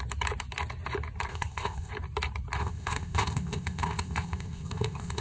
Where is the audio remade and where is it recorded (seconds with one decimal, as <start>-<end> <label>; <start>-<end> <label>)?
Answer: 0.0-1.3 recorded; 1.3-1.9 remade; 1.9-2.6 recorded; 2.6-5.2 remade